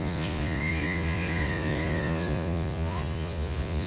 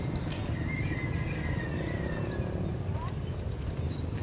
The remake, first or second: first